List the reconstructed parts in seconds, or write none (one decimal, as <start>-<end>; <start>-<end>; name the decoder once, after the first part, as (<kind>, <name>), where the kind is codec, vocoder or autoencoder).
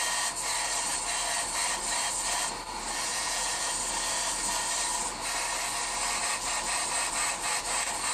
3.1-3.7 (vocoder, Vocos)